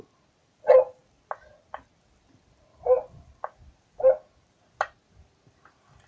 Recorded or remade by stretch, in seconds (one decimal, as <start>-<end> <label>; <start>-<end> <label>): 0.0-6.1 recorded